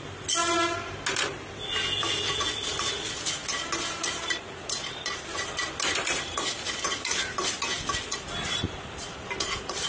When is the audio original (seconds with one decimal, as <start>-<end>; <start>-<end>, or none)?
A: 0.0-9.9